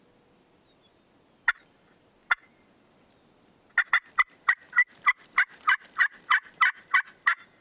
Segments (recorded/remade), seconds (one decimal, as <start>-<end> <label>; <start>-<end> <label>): 0.0-7.6 recorded